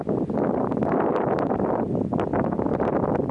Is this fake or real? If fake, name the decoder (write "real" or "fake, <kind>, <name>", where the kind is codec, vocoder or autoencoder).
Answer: real